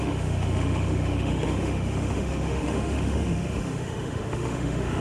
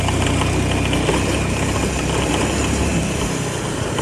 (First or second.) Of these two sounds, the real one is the second